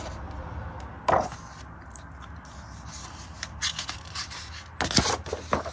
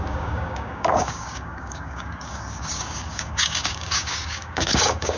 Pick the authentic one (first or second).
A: first